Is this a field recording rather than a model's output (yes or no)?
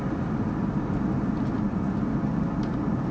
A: yes